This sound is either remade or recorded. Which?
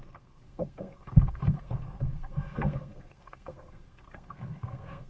remade